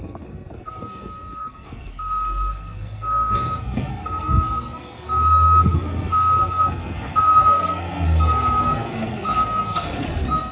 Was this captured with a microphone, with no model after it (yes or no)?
no